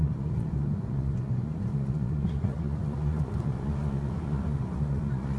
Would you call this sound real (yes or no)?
no